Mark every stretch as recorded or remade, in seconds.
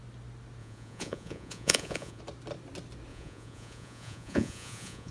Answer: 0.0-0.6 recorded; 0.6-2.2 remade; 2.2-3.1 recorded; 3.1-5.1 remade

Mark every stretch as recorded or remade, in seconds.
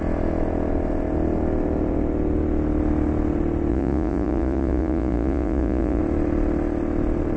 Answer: 0.0-3.7 recorded; 3.7-6.0 remade; 6.0-7.4 recorded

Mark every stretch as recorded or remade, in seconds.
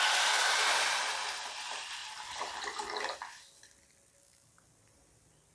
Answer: 0.0-5.5 recorded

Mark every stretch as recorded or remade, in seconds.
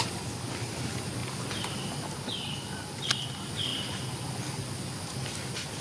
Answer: 0.0-5.8 recorded